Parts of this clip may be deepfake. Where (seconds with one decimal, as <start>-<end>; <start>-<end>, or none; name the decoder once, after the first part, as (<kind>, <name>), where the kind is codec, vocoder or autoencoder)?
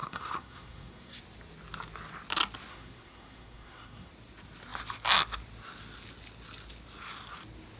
0.0-1.2 (codec, SNAC); 2.7-4.1